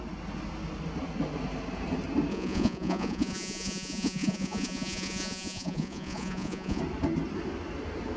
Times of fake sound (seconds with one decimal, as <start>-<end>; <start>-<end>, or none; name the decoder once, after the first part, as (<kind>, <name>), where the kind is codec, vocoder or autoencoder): 2.3-6.8 (vocoder, Vocos)